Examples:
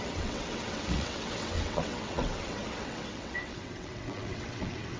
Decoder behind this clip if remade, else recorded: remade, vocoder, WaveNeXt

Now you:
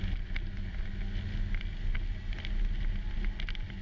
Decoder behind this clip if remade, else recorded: recorded